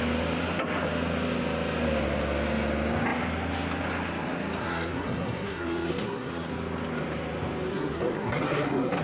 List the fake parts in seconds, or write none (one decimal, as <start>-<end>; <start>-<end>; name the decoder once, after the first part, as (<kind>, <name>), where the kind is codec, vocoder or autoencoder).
4.6-6.5 (codec, SNAC); 7.7-9.0